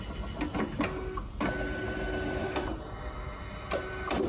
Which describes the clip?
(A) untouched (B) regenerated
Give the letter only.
A